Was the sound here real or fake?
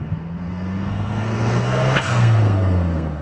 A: fake